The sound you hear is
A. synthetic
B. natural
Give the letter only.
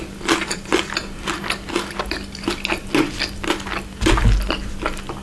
B